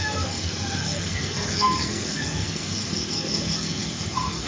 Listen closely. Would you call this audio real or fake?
fake